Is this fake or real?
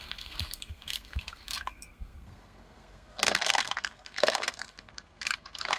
fake